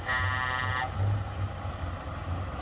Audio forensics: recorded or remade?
recorded